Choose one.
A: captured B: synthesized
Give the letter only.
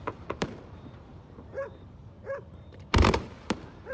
B